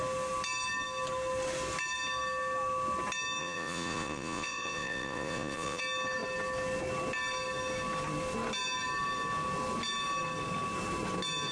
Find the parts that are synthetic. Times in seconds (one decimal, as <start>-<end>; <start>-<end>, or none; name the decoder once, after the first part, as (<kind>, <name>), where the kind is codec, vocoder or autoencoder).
3.4-5.8 (vocoder, Vocos)